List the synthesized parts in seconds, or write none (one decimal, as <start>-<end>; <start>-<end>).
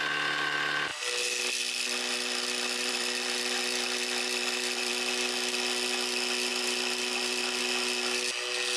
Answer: 0.9-4.9; 6.5-7.6